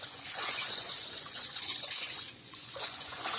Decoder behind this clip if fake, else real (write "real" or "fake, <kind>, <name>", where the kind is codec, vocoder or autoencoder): fake, vocoder, Vocos